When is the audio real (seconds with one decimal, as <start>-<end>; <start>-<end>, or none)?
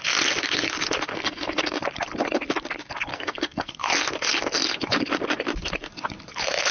0.0-1.1; 1.8-3.1; 3.7-6.7